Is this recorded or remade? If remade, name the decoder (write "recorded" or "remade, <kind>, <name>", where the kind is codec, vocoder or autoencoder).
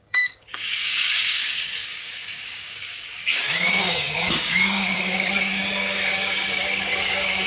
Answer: remade, codec, DAC